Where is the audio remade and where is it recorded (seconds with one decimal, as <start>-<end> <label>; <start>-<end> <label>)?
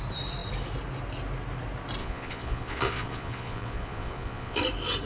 0.0-2.0 recorded; 2.0-4.6 remade; 4.6-5.1 recorded